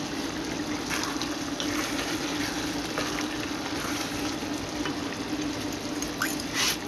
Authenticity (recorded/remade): recorded